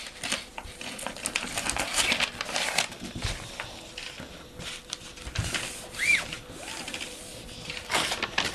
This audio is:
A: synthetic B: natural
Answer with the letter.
B